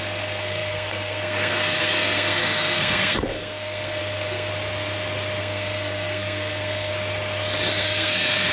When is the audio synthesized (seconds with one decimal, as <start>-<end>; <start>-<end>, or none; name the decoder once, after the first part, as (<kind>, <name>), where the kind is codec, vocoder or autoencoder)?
0.0-4.5 (codec, SNAC); 5.4-6.9; 7.7-8.5